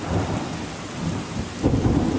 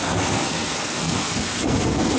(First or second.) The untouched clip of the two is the first